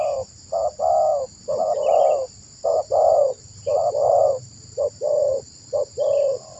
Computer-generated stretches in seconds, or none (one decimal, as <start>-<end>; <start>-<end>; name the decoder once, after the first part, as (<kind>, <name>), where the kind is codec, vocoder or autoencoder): none